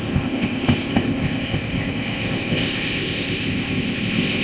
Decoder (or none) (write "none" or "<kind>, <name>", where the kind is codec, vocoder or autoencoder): codec, ZipCodec